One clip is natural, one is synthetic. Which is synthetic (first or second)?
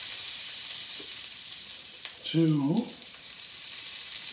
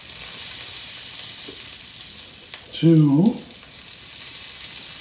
first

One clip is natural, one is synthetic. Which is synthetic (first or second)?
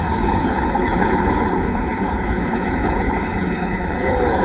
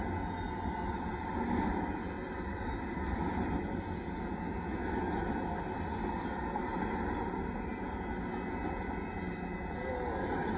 first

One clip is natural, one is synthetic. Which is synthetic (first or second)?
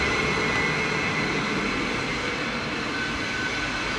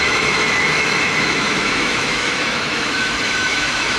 second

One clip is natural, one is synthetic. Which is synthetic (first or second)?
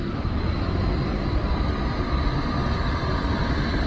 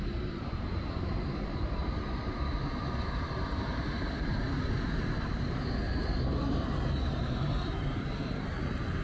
second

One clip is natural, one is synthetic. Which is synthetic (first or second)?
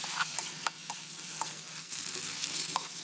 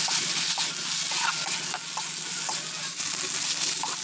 first